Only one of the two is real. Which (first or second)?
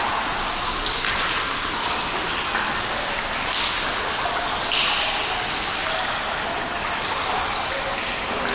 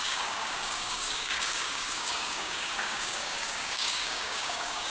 first